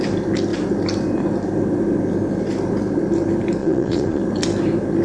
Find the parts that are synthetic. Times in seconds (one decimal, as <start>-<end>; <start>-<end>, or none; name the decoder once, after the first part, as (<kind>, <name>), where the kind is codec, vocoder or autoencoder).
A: 3.6-4.2 (vocoder, Vocos)

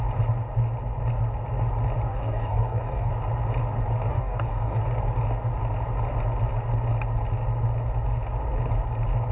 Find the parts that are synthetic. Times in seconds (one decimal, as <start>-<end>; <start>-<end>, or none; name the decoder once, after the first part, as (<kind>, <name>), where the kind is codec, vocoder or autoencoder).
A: 2.1-3.1 (codec, DAC); 4.1-4.8

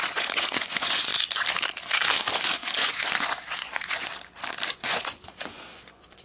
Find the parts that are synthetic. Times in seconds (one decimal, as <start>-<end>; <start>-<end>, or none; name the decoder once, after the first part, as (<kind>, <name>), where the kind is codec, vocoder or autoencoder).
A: 0.0-1.1 (vocoder, Vocos); 2.3-4.1; 4.7-6.2

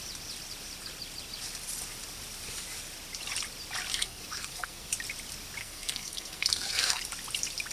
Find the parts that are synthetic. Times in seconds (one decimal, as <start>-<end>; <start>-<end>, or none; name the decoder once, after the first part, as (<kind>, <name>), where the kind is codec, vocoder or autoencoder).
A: 3.9-4.9 (codec, SNAC); 5.6-7.0

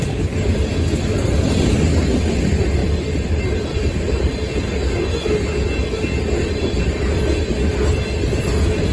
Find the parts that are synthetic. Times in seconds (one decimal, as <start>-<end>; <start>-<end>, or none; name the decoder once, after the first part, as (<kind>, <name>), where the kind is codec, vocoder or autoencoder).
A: none